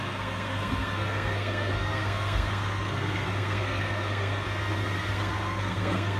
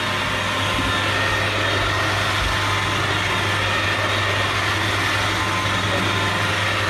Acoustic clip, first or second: second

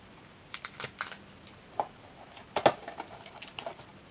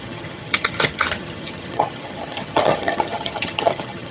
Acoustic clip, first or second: first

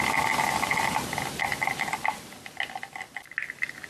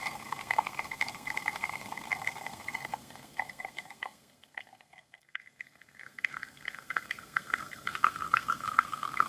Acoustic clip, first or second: first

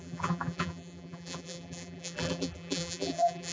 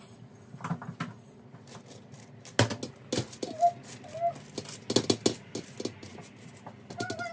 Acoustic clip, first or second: second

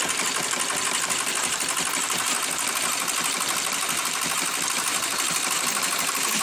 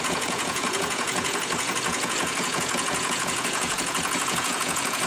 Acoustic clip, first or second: first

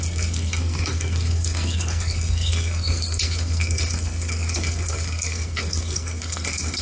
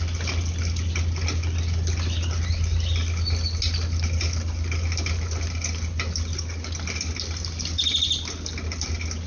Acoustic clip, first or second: second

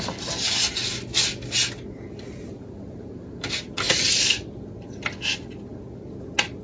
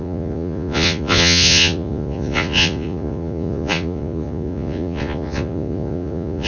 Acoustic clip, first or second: first